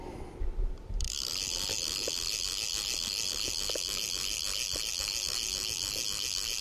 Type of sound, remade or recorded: recorded